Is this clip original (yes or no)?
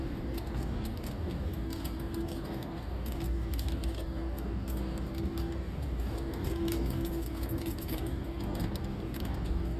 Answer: no